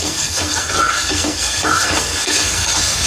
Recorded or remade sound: remade